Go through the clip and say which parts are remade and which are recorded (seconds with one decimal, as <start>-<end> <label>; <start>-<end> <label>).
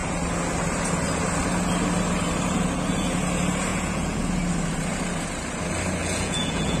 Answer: 0.0-3.7 recorded; 3.7-4.2 remade; 4.2-6.0 recorded; 6.0-6.8 remade